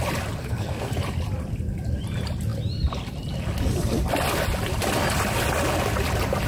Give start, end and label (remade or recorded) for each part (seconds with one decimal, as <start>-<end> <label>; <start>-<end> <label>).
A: 0.0-0.4 recorded; 0.4-0.9 remade; 0.9-6.5 recorded